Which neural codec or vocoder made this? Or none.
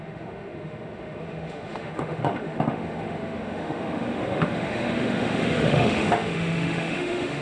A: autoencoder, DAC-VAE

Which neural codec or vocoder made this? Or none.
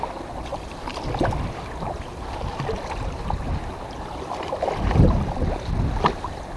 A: none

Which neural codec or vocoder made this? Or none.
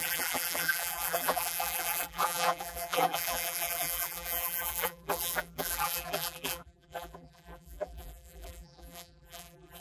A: vocoder, BigVGAN v2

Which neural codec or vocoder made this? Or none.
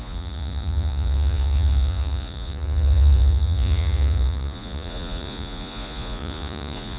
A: vocoder, Vocos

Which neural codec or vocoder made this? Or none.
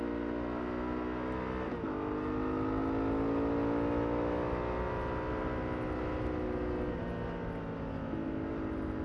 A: none